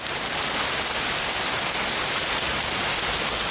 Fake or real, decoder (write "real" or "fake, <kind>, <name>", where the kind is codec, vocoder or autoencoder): real